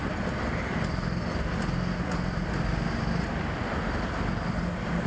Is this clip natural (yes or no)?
yes